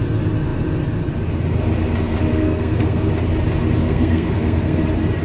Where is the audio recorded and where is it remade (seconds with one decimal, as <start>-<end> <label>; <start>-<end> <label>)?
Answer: 0.0-2.3 recorded; 2.3-3.1 remade; 3.1-3.8 recorded; 3.8-4.8 remade; 4.8-5.2 recorded